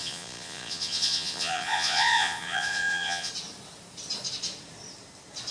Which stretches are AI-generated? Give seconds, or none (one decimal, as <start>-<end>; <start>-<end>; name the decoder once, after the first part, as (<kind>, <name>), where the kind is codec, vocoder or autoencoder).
0.0-3.3 (vocoder, Vocos)